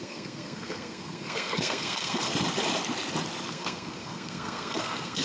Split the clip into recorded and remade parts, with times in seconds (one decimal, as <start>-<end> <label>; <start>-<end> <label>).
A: 0.0-2.3 remade; 2.3-3.5 recorded; 3.5-5.2 remade